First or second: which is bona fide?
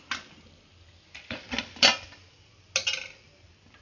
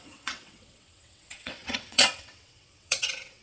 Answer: first